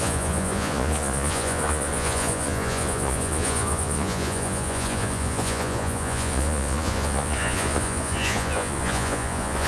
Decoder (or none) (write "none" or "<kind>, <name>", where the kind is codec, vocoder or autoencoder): vocoder, Vocos